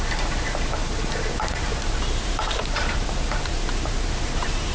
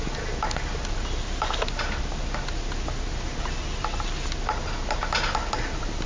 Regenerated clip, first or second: first